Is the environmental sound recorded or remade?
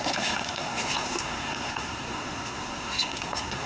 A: remade